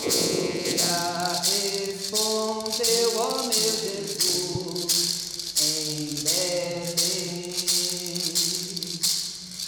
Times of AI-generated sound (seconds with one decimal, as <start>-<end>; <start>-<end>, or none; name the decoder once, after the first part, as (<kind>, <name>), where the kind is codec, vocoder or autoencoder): 0.0-0.9 (vocoder, Vocos)

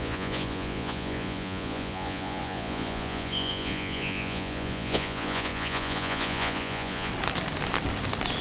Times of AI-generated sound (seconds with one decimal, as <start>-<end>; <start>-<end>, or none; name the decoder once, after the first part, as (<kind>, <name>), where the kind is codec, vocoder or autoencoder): 0.0-7.1 (vocoder, Vocos)

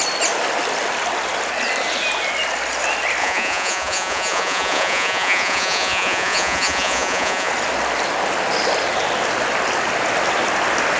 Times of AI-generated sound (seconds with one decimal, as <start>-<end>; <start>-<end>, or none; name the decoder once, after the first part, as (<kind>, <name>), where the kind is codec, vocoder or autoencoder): 3.2-7.5 (vocoder, Vocos)

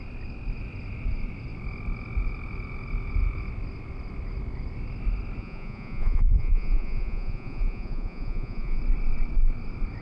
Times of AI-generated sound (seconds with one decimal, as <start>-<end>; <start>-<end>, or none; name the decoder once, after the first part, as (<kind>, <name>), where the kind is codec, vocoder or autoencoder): 5.4-8.8 (vocoder, Vocos)

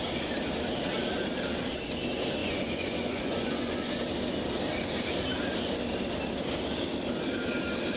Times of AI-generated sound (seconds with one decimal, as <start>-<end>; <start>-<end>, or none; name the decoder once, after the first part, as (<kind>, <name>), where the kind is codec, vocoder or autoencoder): 2.4-3.9 (vocoder, Vocos)

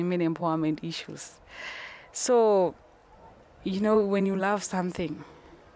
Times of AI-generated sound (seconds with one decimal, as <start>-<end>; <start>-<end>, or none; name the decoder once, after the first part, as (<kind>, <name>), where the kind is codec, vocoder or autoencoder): 3.0-4.4 (vocoder, Vocos)

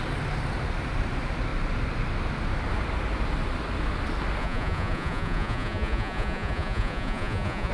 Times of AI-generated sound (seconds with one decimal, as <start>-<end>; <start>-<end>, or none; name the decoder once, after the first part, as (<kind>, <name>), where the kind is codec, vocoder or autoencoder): 4.4-7.7 (vocoder, Vocos)